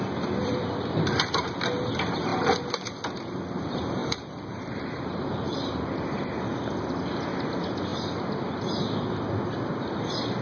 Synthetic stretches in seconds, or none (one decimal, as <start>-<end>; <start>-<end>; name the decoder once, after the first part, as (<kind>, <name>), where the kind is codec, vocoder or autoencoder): 0.4-1.5 (vocoder, BigVGAN v2); 4.0-6.0